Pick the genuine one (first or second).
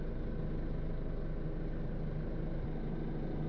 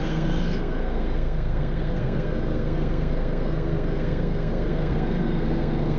first